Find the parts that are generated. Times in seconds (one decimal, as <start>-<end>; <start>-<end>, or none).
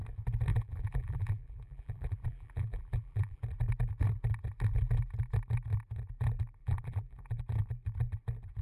0.5-3.4; 6.6-7.4